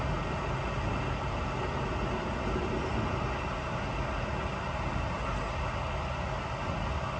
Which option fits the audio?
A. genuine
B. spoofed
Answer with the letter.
A